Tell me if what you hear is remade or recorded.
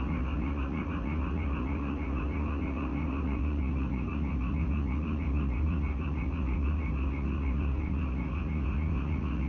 remade